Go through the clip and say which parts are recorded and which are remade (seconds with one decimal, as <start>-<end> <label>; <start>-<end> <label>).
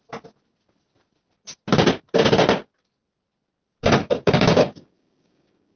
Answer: 0.0-4.0 recorded; 4.0-5.8 remade